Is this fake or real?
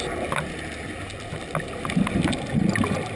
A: real